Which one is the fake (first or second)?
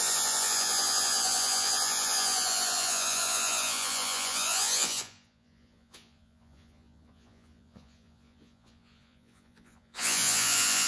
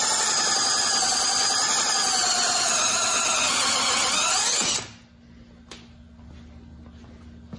first